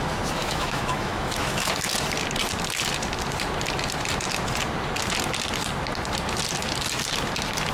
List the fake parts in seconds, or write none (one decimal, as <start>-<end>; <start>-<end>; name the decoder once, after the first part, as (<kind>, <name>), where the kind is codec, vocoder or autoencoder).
0.4-1.7 (autoencoder, DAC-VAE)